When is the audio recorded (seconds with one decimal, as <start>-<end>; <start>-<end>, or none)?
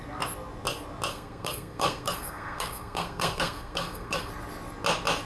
0.0-1.1; 4.3-5.3